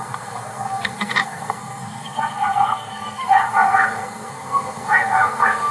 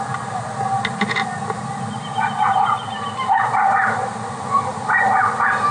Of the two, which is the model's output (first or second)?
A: first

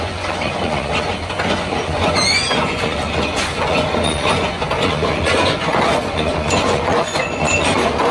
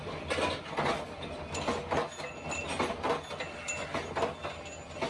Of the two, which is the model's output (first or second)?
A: first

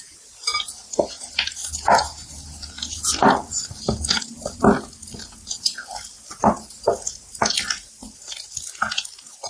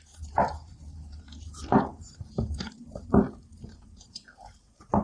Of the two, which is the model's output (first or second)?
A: second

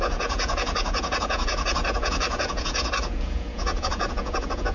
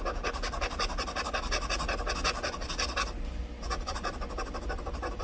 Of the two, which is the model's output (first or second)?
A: first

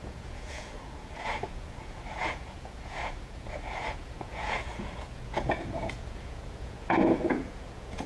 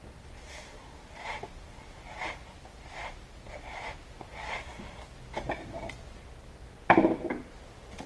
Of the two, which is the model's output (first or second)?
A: first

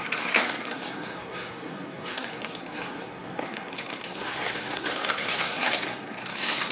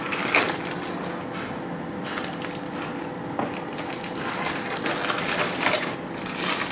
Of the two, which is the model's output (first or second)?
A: first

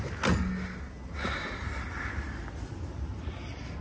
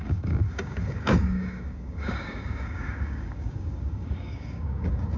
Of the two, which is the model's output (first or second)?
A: second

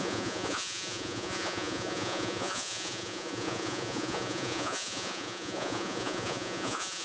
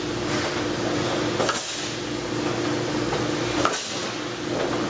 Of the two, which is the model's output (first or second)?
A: first